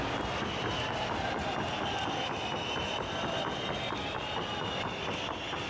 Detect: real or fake real